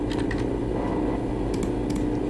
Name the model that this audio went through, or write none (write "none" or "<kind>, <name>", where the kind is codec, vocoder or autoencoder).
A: none